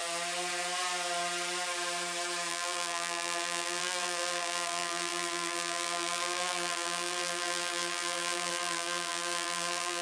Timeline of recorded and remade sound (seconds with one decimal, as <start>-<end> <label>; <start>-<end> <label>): 0.0-2.5 recorded; 2.5-10.0 remade